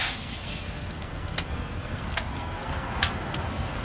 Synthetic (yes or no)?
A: yes